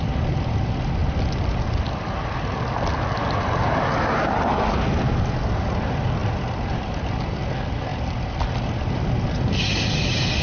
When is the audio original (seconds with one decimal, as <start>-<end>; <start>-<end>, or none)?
0.0-10.4